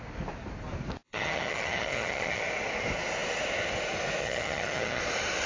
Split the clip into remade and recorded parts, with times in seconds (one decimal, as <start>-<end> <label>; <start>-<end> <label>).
0.0-1.1 recorded; 1.1-2.4 remade; 2.4-4.2 recorded; 4.2-5.0 remade; 5.0-5.5 recorded